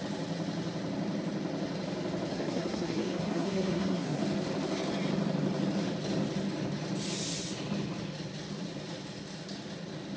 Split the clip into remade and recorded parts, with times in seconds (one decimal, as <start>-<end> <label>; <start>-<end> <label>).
0.0-2.3 recorded; 2.3-4.2 remade; 4.2-10.2 recorded